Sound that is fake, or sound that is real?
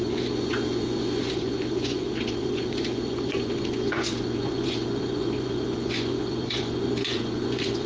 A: fake